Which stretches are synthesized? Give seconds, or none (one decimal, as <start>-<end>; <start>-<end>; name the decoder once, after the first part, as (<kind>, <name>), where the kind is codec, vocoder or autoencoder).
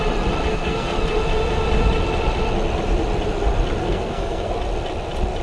0.5-1.0 (codec, SNAC); 3.8-4.5